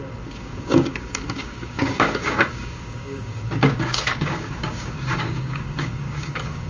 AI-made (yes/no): yes